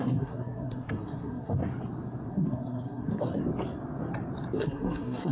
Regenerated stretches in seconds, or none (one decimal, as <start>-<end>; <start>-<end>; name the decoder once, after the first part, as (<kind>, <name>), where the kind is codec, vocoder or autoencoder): 0.0-1.6 (codec, SNAC); 2.3-3.4; 4.6-5.3